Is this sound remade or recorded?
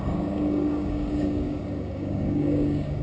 remade